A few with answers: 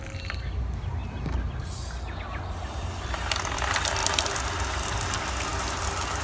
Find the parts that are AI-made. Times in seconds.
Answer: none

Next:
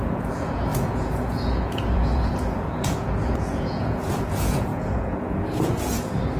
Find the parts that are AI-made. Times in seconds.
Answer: 0.0-6.4 (vocoder, Vocos)